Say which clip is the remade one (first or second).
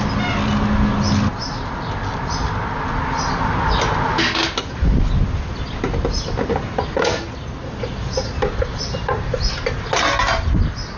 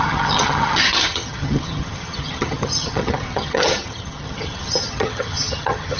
second